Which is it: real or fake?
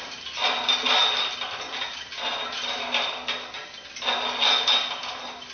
real